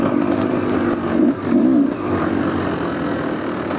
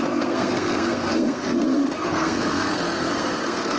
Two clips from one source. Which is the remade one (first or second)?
second